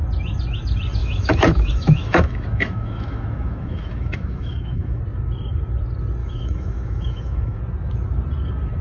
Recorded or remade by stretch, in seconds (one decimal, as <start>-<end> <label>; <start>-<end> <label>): 0.0-1.0 recorded; 1.0-5.0 remade; 5.0-6.2 recorded; 6.2-7.6 remade; 7.6-8.8 recorded